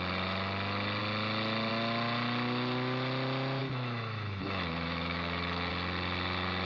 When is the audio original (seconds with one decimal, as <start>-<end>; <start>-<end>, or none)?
0.0-3.6; 5.7-6.6